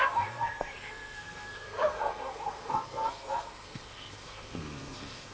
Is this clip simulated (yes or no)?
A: yes